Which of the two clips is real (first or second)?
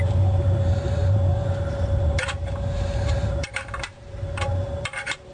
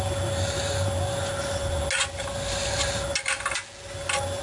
second